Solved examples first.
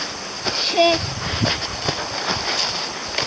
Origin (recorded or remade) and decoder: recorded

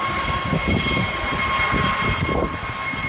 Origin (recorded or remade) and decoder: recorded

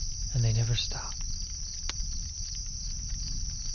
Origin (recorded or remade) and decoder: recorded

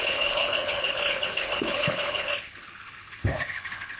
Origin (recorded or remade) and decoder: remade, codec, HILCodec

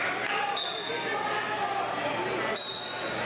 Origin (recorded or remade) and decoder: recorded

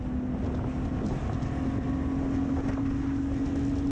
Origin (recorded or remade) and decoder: recorded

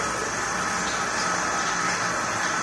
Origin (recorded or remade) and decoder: recorded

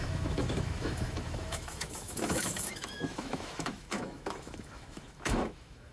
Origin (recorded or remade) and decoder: remade, autoencoder, DAC-VAE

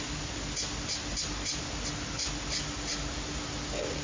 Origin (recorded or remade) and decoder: recorded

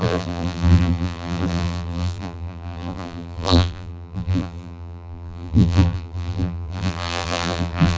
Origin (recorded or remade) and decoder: remade, vocoder, BigVGAN v2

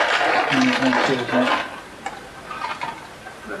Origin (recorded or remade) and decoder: recorded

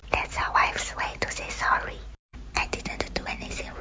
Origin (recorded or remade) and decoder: remade, vocoder, BigVGAN v2